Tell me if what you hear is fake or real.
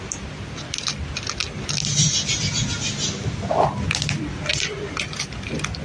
real